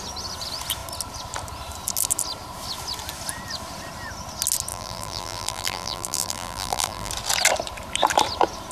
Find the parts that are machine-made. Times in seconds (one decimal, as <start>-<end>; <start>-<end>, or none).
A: 4.7-7.1